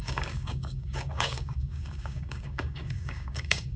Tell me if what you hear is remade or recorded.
remade